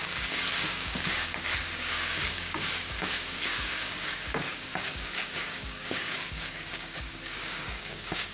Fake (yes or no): yes